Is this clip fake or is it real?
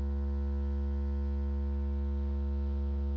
real